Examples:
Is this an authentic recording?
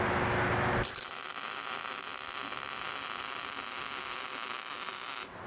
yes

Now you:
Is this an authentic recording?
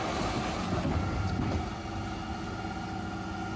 yes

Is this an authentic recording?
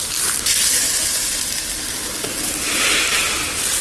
yes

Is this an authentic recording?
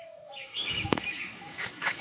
no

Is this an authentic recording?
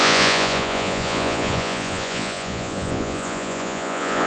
no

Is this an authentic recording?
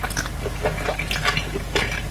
yes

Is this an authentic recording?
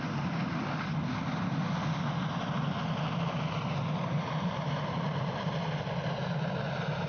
yes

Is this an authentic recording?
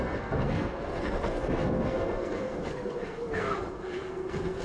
no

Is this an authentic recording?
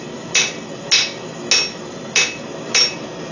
yes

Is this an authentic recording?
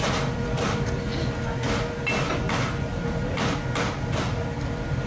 yes